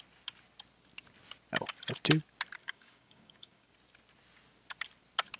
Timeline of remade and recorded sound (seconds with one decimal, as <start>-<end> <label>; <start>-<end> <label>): 0.0-2.6 recorded; 2.6-3.7 remade; 3.7-5.4 recorded